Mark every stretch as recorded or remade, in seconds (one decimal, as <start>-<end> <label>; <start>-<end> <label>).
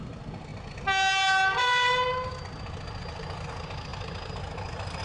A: 0.0-5.0 recorded